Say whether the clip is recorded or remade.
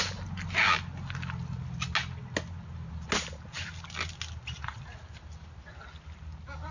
recorded